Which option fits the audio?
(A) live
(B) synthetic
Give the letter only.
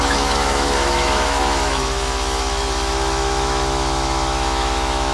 B